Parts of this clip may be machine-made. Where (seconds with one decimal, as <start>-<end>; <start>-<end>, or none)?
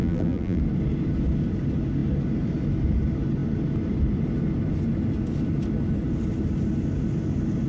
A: 0.0-0.6